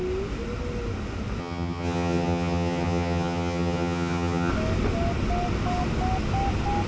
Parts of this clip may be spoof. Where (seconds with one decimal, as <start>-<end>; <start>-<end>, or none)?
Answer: 1.4-4.5